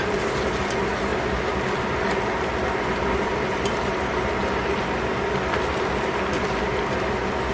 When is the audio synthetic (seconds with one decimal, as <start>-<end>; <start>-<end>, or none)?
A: 0.0-1.1; 4.0-4.6